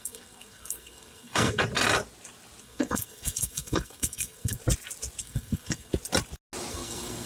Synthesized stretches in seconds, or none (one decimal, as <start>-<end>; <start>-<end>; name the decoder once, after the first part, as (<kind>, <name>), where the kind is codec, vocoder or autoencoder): 0.0-1.6 (codec, SNAC); 2.6-4.6; 5.2-5.9; 6.7-7.3